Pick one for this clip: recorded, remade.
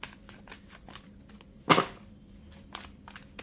recorded